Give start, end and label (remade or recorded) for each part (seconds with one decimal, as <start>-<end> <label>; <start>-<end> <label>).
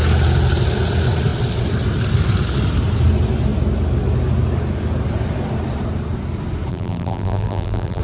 0.0-6.7 recorded; 6.7-8.0 remade